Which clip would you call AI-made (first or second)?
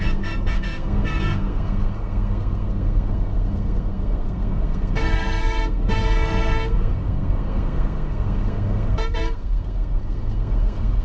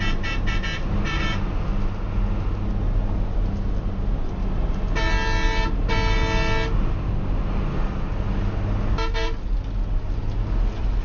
first